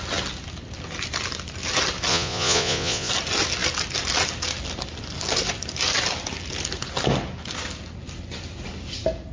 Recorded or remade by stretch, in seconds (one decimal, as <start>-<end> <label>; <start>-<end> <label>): 0.0-2.1 recorded; 2.1-3.1 remade; 3.1-9.3 recorded